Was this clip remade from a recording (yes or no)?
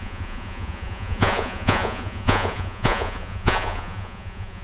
yes